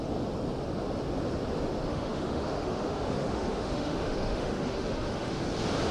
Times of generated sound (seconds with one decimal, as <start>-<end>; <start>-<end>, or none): 1.9-5.4